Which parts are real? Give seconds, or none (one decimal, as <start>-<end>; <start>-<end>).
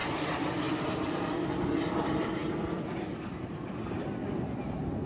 0.0-5.1